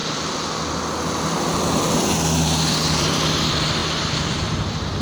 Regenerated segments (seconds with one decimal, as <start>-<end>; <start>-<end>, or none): 3.0-5.0